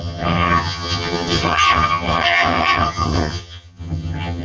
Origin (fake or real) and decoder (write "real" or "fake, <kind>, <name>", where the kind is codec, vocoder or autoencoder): fake, vocoder, HiFi-GAN